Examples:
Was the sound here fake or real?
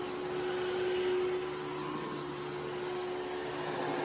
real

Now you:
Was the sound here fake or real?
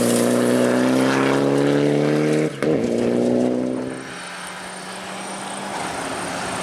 real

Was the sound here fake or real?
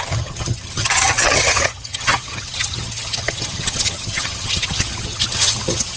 fake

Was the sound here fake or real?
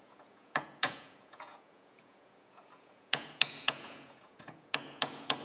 fake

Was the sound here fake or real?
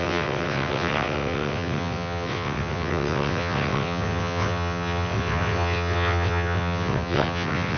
fake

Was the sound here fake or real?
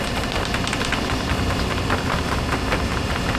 real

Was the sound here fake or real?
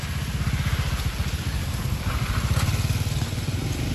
real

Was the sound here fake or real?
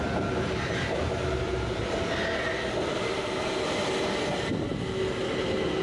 real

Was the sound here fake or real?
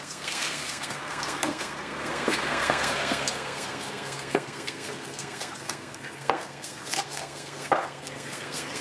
fake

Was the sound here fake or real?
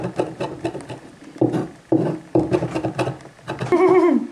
real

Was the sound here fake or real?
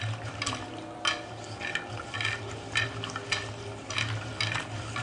real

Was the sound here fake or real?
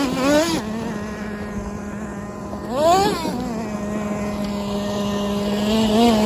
real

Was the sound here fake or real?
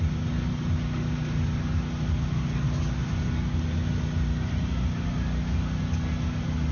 real